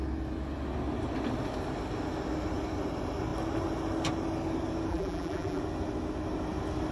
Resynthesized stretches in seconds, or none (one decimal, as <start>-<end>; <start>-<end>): 4.9-5.6